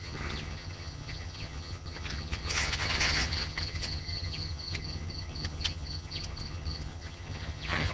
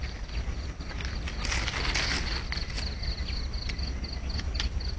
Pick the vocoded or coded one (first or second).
first